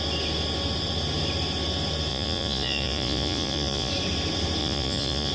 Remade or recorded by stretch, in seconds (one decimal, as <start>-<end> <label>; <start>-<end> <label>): 0.0-2.1 recorded; 2.1-3.9 remade; 3.9-4.6 recorded; 4.6-5.3 remade